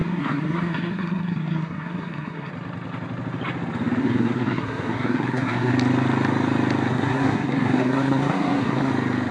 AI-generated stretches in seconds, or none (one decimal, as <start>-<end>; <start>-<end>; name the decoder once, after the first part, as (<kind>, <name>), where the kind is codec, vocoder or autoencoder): 0.0-2.5 (codec, SNAC); 4.0-5.7; 6.9-8.9